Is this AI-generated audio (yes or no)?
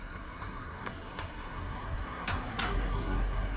yes